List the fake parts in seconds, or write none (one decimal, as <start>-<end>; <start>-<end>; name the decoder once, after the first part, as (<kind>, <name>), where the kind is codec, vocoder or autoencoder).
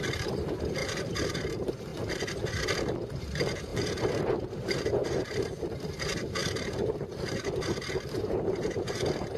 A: 0.0-1.9 (vocoder, BigVGAN v2); 3.2-3.7; 4.2-9.4